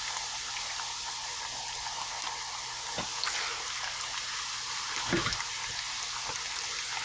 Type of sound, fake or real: real